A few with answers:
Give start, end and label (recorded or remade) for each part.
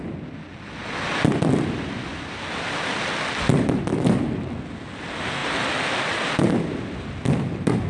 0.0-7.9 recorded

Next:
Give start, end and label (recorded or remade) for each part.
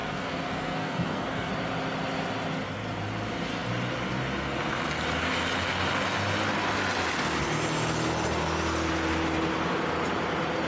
0.0-1.5 remade; 1.5-10.7 recorded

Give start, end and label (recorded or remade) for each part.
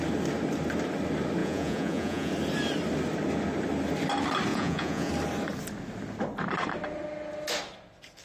0.0-1.4 recorded; 1.4-2.3 remade; 2.3-4.5 recorded; 4.5-5.1 remade; 5.1-8.2 recorded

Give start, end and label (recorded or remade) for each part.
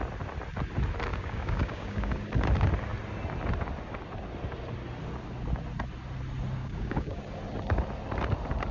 0.0-1.1 recorded; 1.1-2.1 remade; 2.1-6.6 recorded; 6.6-7.2 remade; 7.2-8.7 recorded